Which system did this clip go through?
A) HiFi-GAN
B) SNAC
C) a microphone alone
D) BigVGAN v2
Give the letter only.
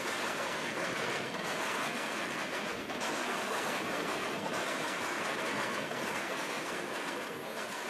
B